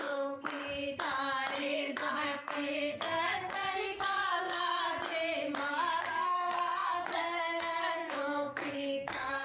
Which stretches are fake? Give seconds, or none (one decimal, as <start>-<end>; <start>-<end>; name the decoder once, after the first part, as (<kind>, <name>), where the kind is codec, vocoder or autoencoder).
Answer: 0.0-0.6 (codec, SNAC); 1.6-4.8; 5.7-9.4